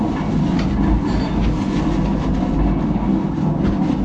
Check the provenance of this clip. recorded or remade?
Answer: recorded